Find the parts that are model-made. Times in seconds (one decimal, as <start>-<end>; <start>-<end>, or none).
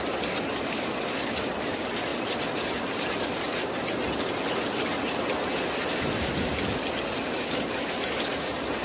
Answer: none